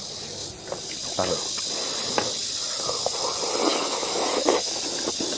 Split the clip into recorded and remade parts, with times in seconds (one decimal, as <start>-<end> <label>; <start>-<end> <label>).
0.0-3.7 recorded; 3.7-4.8 remade; 4.8-5.4 recorded